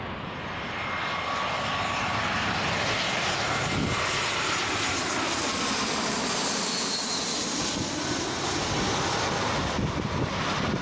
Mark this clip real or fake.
real